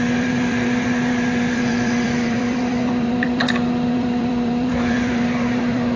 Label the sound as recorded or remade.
remade